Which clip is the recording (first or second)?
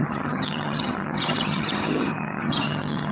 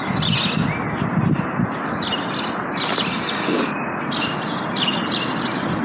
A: second